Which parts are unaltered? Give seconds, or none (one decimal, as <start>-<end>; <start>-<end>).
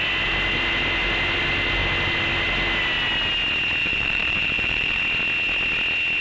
0.0-3.8; 5.0-6.2